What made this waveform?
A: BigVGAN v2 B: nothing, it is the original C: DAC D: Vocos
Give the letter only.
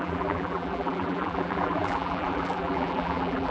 A